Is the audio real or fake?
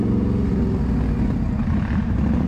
real